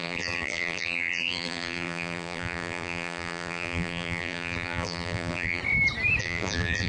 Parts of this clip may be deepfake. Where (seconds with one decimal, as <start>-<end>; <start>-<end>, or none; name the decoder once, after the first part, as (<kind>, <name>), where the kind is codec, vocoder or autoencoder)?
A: 0.0-5.6 (vocoder, BigVGAN v2); 6.2-6.9